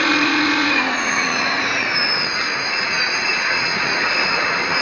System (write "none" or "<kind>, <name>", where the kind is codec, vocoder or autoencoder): vocoder, Vocos